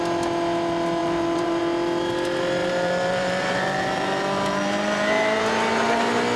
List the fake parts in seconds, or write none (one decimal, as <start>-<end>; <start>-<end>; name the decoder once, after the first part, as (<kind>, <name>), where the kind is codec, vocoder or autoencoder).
1.0-1.6 (vocoder, BigVGAN v2); 2.6-5.4